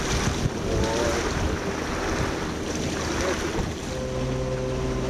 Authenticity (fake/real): real